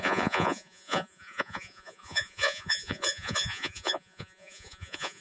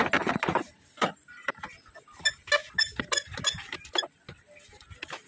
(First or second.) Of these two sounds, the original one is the second